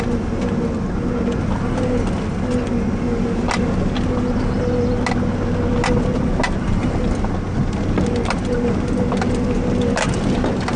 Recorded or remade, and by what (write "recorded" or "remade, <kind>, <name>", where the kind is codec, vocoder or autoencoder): recorded